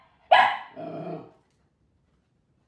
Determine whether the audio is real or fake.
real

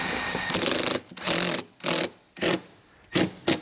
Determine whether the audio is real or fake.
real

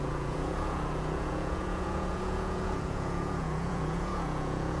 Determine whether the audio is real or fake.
fake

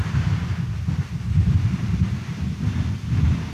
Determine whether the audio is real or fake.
real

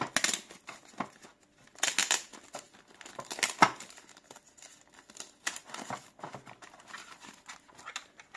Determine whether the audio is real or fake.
real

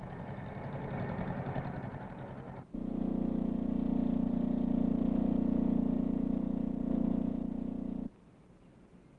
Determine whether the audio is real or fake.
real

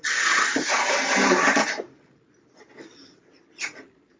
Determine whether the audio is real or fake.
real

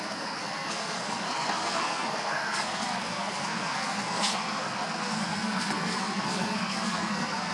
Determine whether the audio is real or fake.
fake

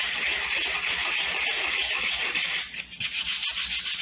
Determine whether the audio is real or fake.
real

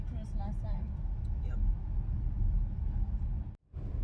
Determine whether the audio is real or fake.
real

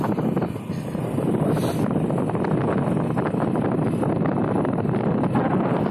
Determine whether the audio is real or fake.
real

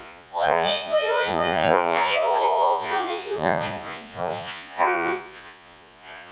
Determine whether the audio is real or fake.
fake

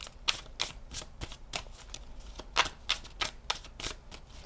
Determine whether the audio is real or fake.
real